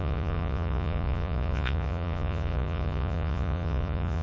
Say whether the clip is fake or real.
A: fake